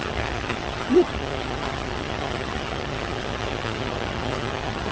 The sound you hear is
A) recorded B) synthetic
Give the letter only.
B